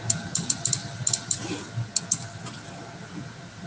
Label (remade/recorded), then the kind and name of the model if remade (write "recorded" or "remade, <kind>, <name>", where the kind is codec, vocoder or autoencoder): recorded